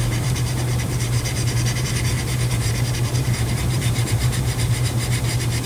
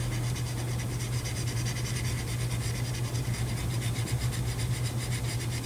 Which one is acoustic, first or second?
second